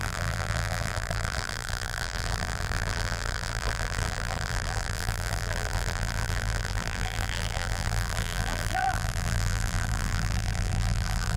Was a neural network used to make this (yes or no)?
yes